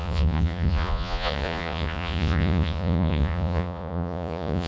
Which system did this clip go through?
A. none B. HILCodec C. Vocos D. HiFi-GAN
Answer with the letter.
C